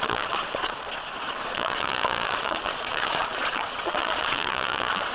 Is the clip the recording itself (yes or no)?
no